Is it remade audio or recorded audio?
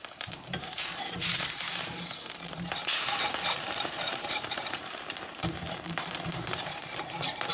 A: remade